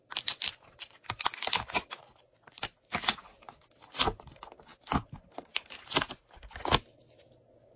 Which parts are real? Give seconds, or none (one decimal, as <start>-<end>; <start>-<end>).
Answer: 0.0-7.8